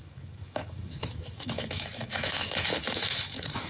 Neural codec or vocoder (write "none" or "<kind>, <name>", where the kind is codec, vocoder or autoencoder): autoencoder, DAC-VAE